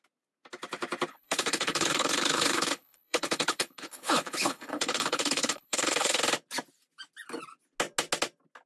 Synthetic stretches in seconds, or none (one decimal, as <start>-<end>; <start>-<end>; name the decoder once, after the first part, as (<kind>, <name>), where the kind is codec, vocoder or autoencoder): 1.1-6.2 (codec, HILCodec)